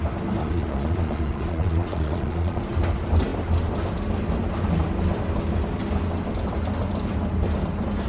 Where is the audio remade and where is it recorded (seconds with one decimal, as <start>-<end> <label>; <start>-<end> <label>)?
0.0-0.4 recorded; 0.4-2.6 remade; 2.6-8.1 recorded